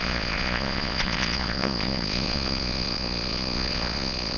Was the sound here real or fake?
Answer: fake